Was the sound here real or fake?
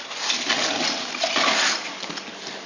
real